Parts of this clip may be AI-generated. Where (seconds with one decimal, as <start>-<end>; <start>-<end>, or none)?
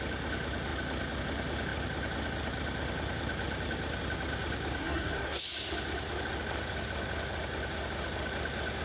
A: 4.8-5.4